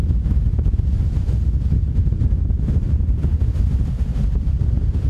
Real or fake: real